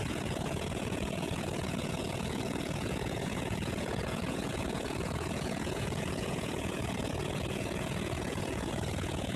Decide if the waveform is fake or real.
fake